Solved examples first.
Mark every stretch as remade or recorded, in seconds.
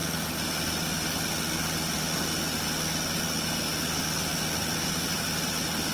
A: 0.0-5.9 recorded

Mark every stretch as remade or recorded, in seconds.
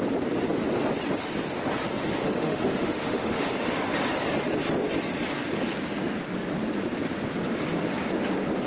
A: 0.0-2.2 recorded; 2.2-3.5 remade; 3.5-8.7 recorded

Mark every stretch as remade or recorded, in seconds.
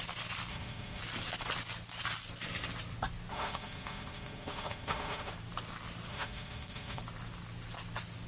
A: 0.0-0.5 recorded; 0.5-1.0 remade; 1.0-3.3 recorded; 3.3-5.3 remade; 5.3-6.1 recorded; 6.1-7.0 remade; 7.0-8.3 recorded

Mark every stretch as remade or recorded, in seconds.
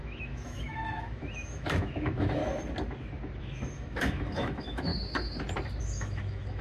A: 0.0-2.4 remade; 2.4-3.4 recorded; 3.4-4.9 remade; 4.9-5.8 recorded; 5.8-6.6 remade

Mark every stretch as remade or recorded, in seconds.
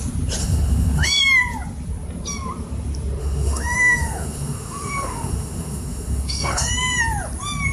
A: 0.0-0.4 recorded; 0.4-1.2 remade; 1.2-3.2 recorded; 3.2-6.7 remade; 6.7-7.7 recorded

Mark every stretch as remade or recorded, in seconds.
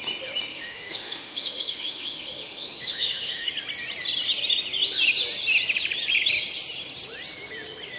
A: 0.0-0.5 recorded; 0.5-3.5 remade; 3.5-8.0 recorded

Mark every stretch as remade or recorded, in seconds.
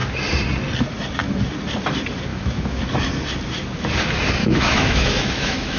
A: 0.0-2.3 recorded; 2.3-2.8 remade; 2.8-4.4 recorded; 4.4-5.8 remade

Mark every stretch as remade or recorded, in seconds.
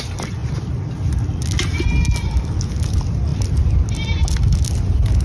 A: 0.0-5.2 recorded